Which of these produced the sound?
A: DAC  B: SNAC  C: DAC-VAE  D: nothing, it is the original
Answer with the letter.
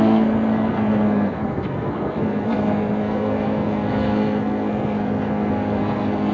B